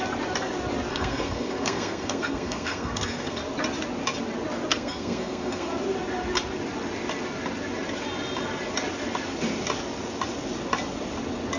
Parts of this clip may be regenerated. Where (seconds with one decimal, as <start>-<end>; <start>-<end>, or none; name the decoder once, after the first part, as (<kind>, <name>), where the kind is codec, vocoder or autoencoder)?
0.9-3.4 (codec, SNAC); 4.7-5.7